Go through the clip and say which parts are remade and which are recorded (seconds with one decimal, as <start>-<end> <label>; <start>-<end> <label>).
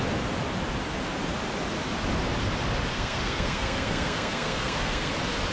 0.0-2.9 recorded; 2.9-5.1 remade; 5.1-5.5 recorded